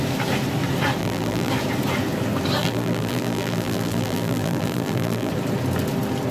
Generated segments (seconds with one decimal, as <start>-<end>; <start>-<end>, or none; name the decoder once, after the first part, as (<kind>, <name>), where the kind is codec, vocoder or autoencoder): 1.0-1.5 (vocoder, BigVGAN v2); 2.6-5.3